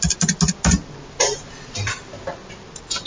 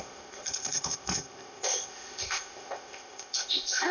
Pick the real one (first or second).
first